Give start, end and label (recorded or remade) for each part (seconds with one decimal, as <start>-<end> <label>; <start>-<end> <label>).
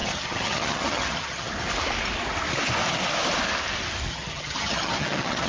0.0-1.5 remade; 1.5-4.1 recorded; 4.1-5.5 remade